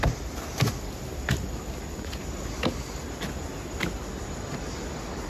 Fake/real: real